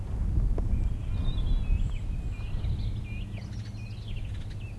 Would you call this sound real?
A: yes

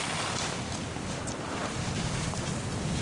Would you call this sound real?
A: yes